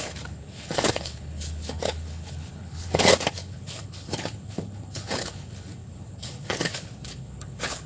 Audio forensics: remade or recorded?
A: remade